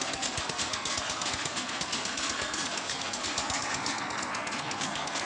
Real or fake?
fake